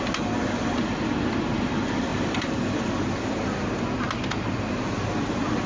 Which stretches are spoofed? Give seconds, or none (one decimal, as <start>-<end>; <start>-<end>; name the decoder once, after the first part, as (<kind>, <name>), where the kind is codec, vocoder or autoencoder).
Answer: 2.1-3.6 (vocoder, BigVGAN v2)